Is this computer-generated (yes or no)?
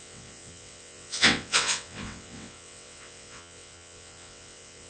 yes